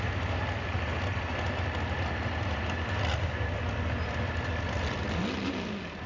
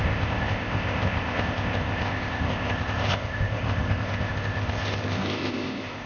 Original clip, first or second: first